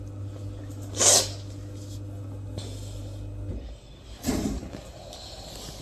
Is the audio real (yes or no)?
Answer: yes